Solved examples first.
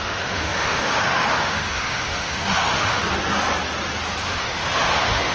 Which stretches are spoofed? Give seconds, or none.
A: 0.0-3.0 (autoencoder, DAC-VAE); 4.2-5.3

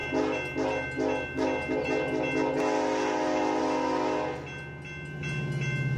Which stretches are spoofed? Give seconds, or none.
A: none

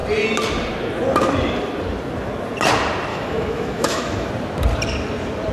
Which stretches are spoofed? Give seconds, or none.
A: 3.1-4.3 (autoencoder, DAC-VAE)

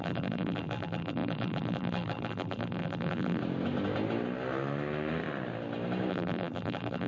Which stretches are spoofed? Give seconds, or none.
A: 0.0-3.4 (vocoder, BigVGAN v2); 6.1-7.1

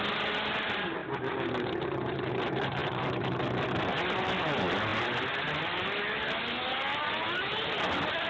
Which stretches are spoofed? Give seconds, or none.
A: none

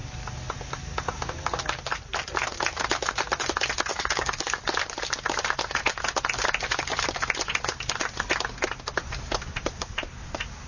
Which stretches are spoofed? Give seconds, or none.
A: 3.9-4.6 (codec, DAC)